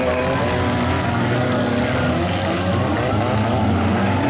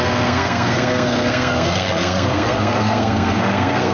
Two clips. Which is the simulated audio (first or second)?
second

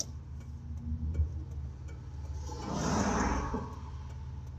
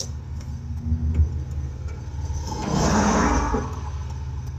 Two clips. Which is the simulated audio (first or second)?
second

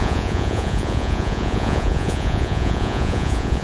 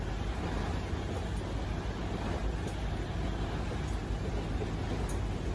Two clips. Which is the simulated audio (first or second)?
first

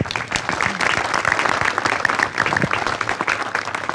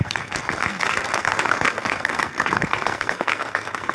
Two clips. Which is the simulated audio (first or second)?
second